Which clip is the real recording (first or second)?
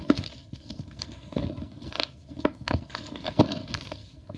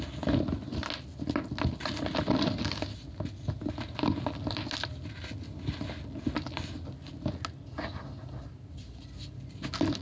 second